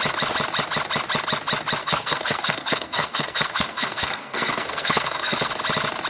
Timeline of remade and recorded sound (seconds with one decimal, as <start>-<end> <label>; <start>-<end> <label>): 0.0-1.8 recorded; 1.8-5.5 remade; 5.5-6.1 recorded